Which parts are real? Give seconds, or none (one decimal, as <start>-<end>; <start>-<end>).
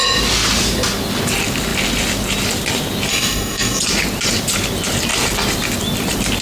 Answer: 0.0-3.1; 3.8-6.4